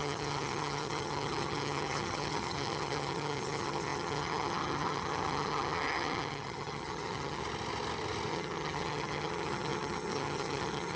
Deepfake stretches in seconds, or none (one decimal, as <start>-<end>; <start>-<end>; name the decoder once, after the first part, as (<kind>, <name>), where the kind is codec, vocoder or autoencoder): 0.0-7.4 (vocoder, HiFi-GAN); 8.3-11.0